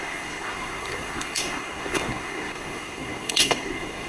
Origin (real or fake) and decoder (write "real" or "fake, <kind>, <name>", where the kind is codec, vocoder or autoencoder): fake, codec, SNAC